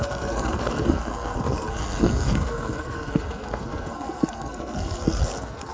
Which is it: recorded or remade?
remade